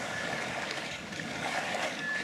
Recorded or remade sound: remade